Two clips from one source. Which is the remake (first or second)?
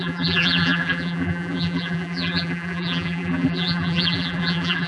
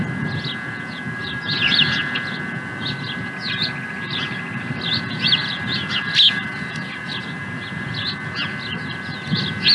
first